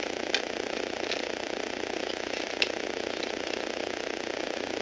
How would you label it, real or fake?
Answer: real